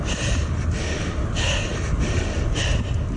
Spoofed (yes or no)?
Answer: no